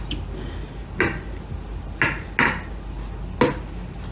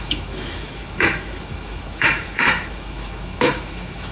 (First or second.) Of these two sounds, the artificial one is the second